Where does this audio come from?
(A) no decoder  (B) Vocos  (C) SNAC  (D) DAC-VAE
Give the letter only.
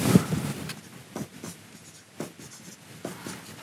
A